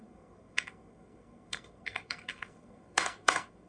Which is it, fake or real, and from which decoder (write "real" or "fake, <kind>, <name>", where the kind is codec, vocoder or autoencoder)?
fake, codec, SNAC